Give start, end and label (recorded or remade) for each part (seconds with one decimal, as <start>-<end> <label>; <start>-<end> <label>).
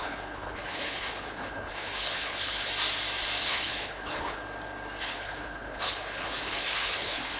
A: 0.0-2.7 remade; 2.7-3.4 recorded; 3.4-4.4 remade; 4.4-5.0 recorded; 5.0-7.4 remade